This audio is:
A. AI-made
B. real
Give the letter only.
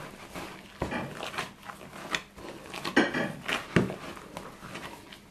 B